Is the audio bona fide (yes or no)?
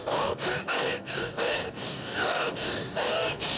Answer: no